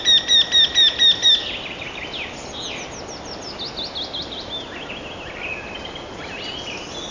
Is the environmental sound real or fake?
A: real